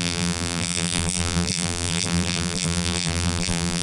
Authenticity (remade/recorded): remade